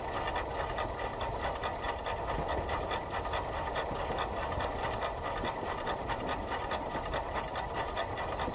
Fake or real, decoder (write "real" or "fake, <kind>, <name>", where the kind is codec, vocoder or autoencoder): real